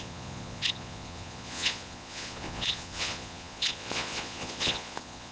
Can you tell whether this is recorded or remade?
remade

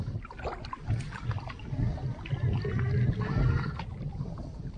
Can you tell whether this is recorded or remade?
recorded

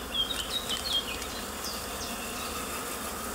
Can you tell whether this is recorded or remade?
recorded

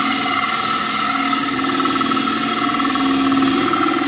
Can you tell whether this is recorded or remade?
recorded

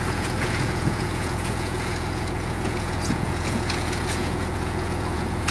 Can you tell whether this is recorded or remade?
remade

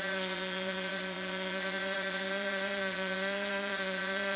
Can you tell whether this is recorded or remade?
remade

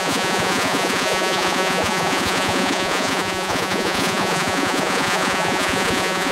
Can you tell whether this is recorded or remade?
remade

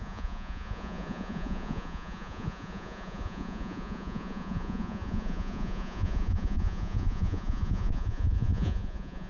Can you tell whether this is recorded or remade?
remade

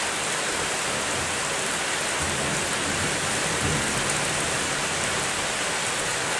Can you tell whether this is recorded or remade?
recorded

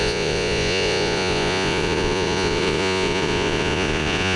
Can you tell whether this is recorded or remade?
remade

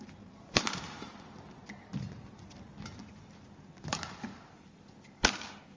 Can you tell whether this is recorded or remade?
recorded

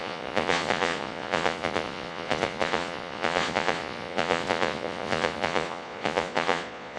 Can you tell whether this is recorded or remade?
remade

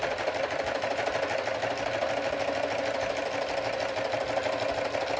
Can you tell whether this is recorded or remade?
recorded